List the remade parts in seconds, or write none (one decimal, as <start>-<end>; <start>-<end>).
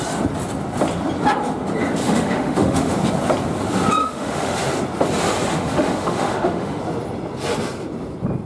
2.0-2.9; 4.0-4.6; 5.5-6.8